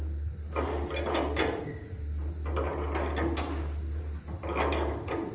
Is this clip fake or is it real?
real